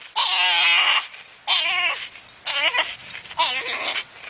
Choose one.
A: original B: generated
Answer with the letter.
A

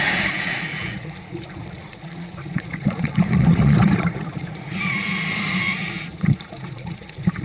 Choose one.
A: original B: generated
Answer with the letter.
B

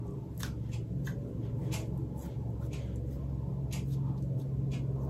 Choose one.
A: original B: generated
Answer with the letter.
A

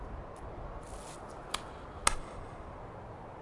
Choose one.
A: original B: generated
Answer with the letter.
A